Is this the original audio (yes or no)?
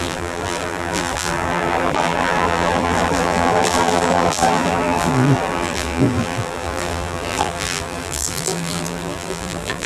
no